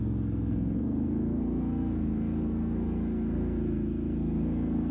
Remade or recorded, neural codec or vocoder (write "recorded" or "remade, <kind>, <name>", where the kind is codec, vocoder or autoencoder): remade, codec, SNAC